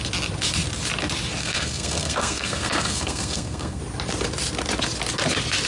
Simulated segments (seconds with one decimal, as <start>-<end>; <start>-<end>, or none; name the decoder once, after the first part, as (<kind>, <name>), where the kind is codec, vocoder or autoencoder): 1.4-3.8 (codec, SNAC)